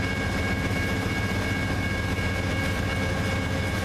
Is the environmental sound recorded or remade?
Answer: recorded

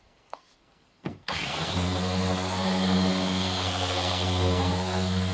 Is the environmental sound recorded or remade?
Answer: remade